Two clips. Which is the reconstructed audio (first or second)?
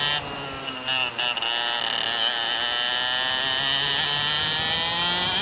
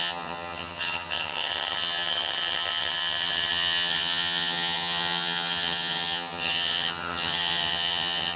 second